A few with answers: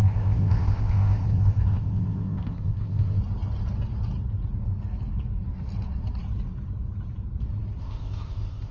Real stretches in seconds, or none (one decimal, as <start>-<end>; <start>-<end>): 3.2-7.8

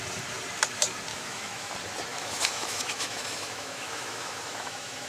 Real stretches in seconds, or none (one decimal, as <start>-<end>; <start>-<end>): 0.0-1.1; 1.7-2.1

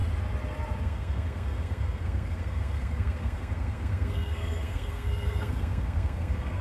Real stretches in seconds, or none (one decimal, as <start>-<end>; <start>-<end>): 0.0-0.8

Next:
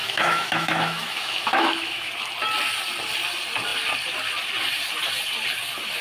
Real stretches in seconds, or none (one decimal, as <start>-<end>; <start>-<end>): 2.1-6.0

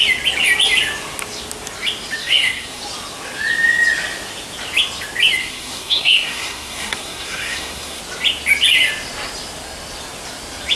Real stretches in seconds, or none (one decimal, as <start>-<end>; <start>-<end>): 0.0-2.2; 2.8-5.4; 8.0-10.8

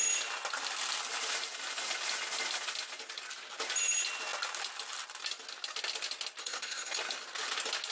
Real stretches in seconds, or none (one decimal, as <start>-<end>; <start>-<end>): 0.0-6.4; 7.0-7.9